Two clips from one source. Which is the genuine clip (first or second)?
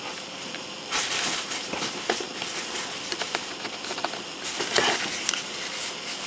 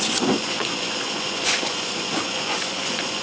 first